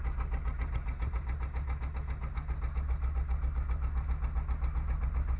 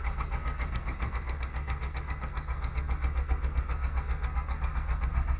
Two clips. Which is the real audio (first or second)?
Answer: first